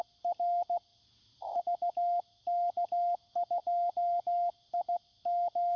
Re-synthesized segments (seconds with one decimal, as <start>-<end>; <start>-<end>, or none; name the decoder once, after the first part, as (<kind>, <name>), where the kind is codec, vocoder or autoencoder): 0.9-1.6 (vocoder, BigVGAN v2); 3.6-4.5